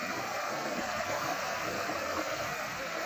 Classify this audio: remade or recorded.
remade